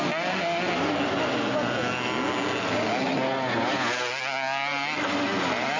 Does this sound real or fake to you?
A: real